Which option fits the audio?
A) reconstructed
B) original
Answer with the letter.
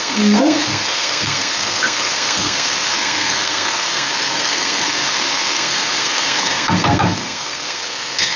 A